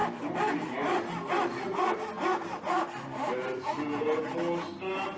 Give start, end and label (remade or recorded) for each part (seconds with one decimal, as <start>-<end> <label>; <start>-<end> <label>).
0.0-5.2 recorded